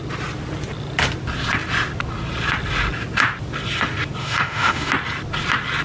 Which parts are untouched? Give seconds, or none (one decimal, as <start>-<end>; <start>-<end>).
0.0-4.2; 4.9-5.8